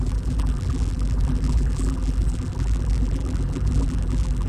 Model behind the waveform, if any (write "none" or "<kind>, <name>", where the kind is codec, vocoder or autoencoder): vocoder, BigVGAN v2